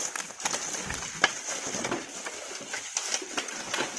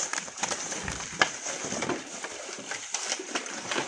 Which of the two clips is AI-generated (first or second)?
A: second